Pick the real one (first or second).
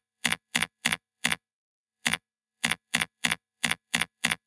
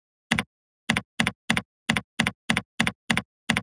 second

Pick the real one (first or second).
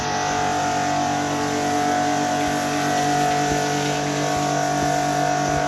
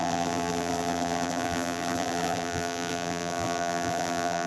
first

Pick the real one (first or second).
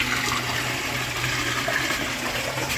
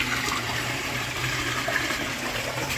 first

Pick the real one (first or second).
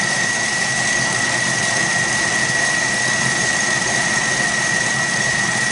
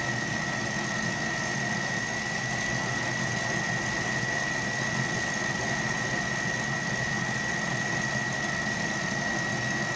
second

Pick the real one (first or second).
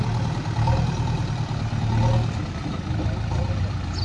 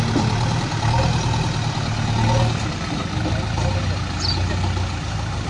second